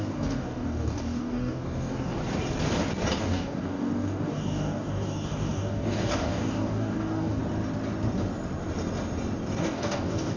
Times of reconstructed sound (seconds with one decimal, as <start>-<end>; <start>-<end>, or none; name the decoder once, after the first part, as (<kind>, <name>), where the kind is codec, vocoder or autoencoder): 0.0-2.2 (codec, DAC); 3.2-7.4; 9.6-10.4